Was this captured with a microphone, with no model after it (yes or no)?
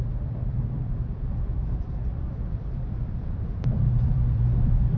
no